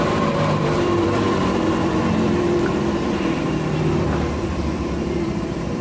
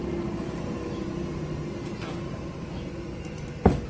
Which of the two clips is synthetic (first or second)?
first